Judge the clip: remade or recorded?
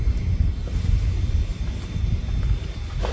recorded